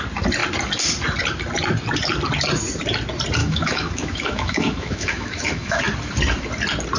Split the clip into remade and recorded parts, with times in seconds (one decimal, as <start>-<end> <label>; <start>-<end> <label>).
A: 0.0-3.4 recorded; 3.4-5.8 remade; 5.8-7.0 recorded